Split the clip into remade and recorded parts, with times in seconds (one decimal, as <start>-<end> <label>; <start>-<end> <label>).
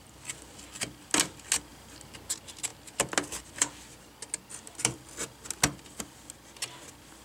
0.0-7.2 recorded